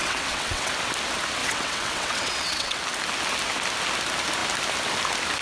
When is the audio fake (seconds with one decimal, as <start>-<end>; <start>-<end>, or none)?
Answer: 0.0-0.7; 1.4-2.8